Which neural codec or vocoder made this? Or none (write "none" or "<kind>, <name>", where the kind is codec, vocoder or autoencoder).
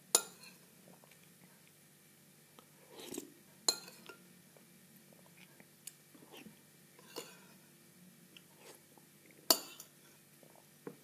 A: none